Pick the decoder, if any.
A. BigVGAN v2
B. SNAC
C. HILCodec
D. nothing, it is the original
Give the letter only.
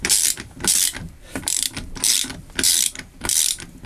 A